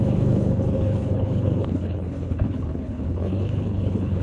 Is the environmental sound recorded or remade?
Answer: remade